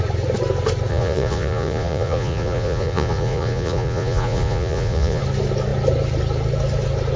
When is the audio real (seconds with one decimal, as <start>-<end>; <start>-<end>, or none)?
0.0-0.9; 5.2-7.2